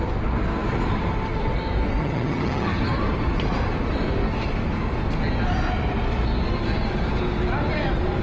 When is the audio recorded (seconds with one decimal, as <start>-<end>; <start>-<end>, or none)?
0.0-2.0; 2.8-8.2